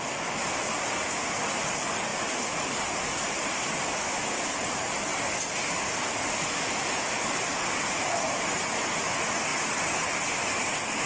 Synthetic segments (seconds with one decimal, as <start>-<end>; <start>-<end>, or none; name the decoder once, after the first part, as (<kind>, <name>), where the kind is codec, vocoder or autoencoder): none